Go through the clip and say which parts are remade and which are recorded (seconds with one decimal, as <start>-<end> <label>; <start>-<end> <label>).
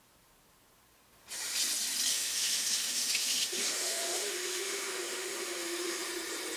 0.0-2.1 recorded; 2.1-6.1 remade; 6.1-6.6 recorded